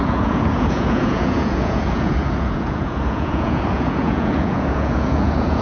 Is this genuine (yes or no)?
no